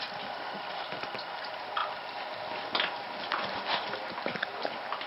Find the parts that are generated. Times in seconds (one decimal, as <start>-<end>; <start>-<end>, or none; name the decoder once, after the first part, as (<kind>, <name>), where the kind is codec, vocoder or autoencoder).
none